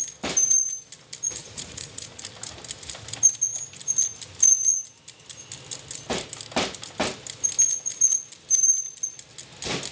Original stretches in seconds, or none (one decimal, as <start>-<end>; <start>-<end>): 0.0-1.4; 2.2-9.9